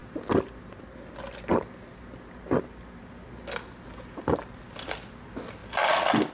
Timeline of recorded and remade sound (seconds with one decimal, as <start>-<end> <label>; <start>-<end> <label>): 0.0-3.0 recorded; 3.0-5.1 remade; 5.1-6.3 recorded